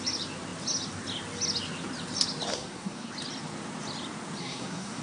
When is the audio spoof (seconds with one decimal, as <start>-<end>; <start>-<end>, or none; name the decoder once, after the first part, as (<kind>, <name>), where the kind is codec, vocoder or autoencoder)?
2.5-3.1 (codec, SNAC); 4.4-5.0